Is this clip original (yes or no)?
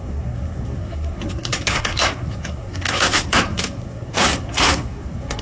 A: no